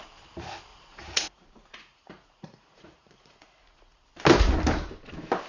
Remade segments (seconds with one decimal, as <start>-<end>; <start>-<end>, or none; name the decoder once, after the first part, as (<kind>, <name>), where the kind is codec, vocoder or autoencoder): 0.7-4.0 (vocoder, Vocos)